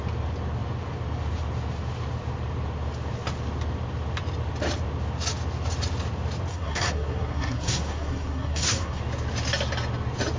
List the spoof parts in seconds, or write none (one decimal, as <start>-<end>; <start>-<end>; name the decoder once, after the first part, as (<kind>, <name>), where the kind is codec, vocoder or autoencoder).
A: 6.5-9.0 (codec, SNAC)